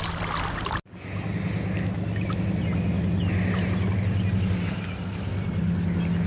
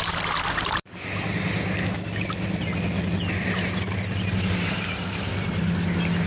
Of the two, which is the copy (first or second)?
second